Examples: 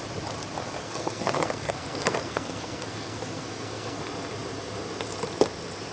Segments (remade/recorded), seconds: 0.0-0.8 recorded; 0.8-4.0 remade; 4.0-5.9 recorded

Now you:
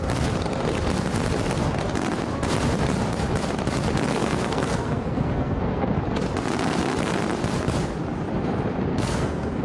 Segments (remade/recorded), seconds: 0.0-4.1 recorded; 4.1-5.9 remade; 5.9-8.9 recorded; 8.9-9.6 remade

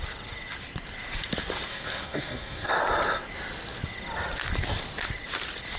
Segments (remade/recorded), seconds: 0.0-1.7 recorded; 1.7-2.7 remade; 2.7-5.8 recorded

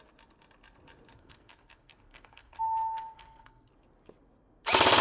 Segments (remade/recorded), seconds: 0.0-1.1 recorded; 1.1-3.7 remade; 3.7-5.0 recorded

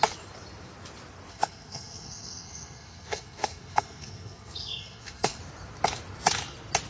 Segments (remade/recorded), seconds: 0.0-1.3 recorded; 1.3-5.4 remade; 5.4-6.9 recorded

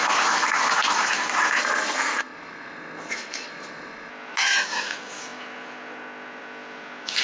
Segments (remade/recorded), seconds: 0.0-1.6 recorded; 1.6-4.1 remade; 4.1-7.2 recorded

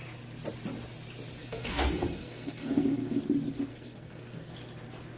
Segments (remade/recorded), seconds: 0.0-1.4 recorded; 1.4-3.2 remade; 3.2-3.7 recorded; 3.7-4.5 remade; 4.5-5.2 recorded